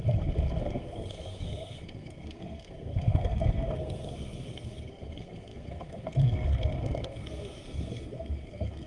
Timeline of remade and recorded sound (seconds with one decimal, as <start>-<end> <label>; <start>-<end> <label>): 0.0-0.6 recorded; 0.6-8.9 remade